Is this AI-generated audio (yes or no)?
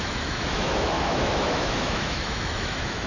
yes